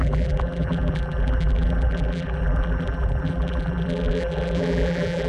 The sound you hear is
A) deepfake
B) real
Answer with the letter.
A